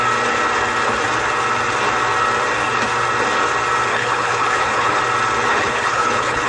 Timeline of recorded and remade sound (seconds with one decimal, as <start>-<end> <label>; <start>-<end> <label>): 0.0-3.9 recorded; 3.9-5.0 remade; 5.0-5.5 recorded; 5.5-6.5 remade